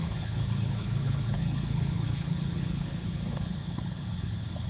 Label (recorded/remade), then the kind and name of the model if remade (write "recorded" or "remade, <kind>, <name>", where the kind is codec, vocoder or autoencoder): remade, codec, HILCodec